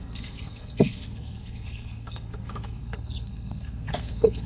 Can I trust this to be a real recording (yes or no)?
no